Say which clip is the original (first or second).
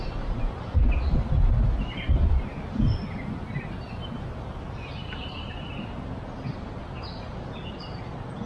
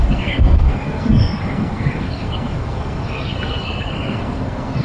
first